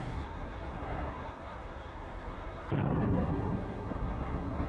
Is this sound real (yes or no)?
no